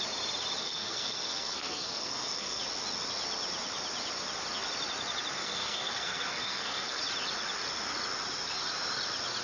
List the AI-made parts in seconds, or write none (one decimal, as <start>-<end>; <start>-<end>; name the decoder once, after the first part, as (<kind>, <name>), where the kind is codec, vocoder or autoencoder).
0.6-2.6 (codec, SNAC); 5.4-7.0